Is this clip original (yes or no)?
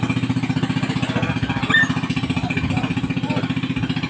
yes